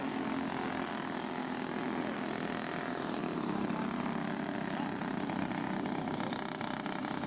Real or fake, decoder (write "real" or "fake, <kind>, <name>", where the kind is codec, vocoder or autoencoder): real